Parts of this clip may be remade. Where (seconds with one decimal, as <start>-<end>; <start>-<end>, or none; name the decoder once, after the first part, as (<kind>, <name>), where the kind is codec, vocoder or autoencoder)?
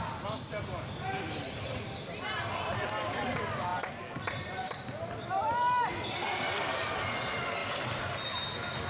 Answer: none